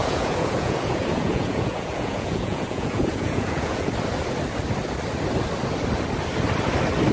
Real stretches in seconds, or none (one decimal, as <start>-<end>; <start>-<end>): 3.9-7.1